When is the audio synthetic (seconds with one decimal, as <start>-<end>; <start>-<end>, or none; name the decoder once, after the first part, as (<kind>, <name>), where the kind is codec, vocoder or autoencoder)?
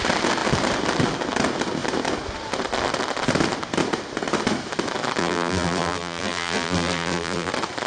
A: 5.2-7.5 (vocoder, BigVGAN v2)